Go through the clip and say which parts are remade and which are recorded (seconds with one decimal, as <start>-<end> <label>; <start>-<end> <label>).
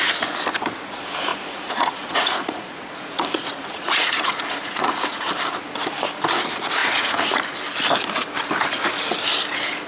0.0-1.3 recorded; 1.3-5.3 remade; 5.3-6.8 recorded; 6.8-7.4 remade; 7.4-9.9 recorded